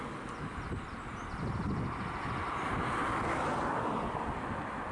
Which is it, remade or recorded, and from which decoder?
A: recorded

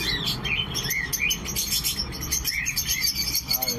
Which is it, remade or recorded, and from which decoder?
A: recorded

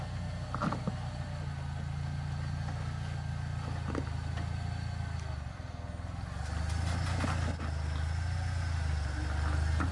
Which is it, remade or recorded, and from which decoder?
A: recorded